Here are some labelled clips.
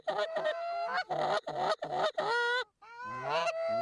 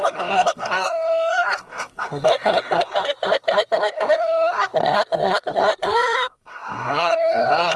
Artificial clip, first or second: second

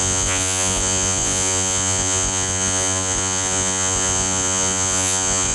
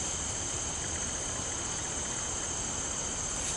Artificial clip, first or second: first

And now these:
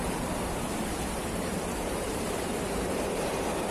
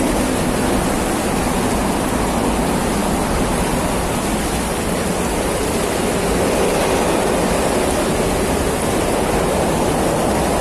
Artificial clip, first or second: first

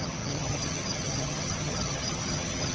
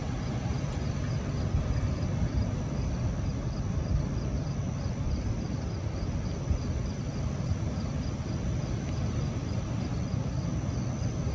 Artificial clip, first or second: first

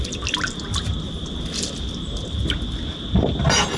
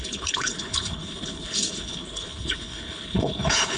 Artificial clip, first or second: second